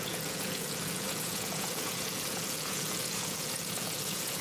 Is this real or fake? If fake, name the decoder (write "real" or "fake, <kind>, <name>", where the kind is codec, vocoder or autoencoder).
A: fake, vocoder, Vocos